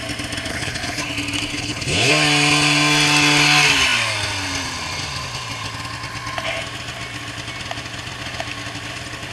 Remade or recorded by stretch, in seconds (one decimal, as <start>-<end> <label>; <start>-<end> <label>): 0.0-0.5 recorded; 0.5-1.1 remade; 1.1-1.5 recorded; 1.5-2.1 remade; 2.1-9.3 recorded